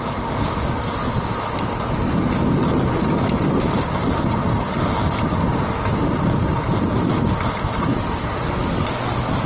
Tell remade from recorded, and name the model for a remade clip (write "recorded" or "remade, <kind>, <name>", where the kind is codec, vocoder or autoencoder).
recorded